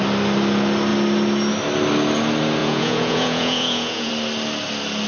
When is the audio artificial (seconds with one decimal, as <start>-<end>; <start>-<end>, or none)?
2.6-4.1